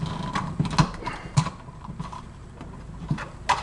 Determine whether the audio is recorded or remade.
recorded